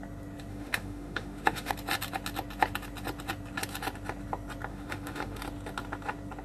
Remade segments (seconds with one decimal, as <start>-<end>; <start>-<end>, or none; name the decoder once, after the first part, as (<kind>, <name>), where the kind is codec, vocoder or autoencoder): 0.5-1.7 (autoencoder, DAC-VAE); 4.7-5.4